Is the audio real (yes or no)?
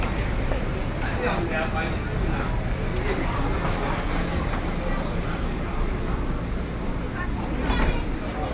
yes